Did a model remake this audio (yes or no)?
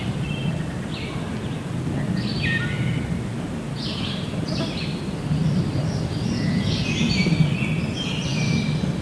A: no